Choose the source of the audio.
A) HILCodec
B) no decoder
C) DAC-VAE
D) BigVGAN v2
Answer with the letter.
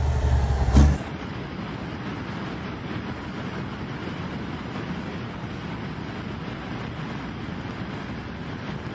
B